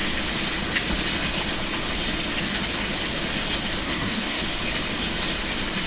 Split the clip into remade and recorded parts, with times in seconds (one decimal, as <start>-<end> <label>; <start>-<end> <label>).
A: 0.0-3.8 recorded; 3.8-4.4 remade; 4.4-5.9 recorded